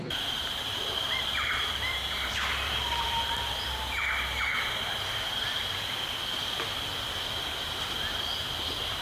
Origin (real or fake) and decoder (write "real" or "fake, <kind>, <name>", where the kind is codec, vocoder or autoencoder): fake, vocoder, BigVGAN v2